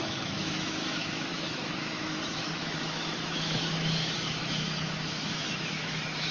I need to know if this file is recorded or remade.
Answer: remade